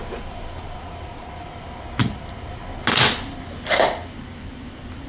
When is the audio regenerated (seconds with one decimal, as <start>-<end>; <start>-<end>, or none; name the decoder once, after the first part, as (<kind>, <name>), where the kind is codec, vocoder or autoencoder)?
none